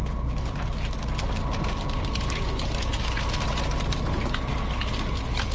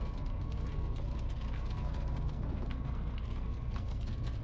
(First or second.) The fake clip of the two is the second